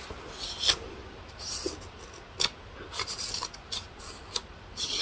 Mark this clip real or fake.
real